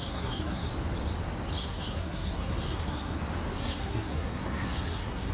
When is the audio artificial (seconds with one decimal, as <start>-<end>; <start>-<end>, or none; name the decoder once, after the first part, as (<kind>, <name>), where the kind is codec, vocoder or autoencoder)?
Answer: 0.0-0.7 (codec, SNAC); 1.6-3.2; 3.6-5.3